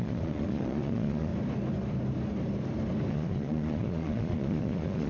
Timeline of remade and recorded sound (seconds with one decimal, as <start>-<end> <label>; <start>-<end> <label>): 0.0-1.3 remade; 1.3-3.1 recorded; 3.1-5.1 remade